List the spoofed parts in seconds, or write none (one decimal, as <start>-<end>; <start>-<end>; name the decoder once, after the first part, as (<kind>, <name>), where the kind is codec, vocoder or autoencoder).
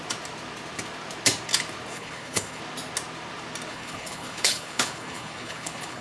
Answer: 1.9-2.6 (codec, HILCodec); 3.7-6.0